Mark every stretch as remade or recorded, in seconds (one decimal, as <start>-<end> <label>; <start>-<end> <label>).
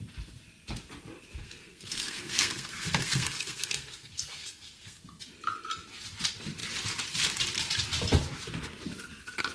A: 0.0-1.4 recorded; 1.4-5.0 remade; 5.0-9.5 recorded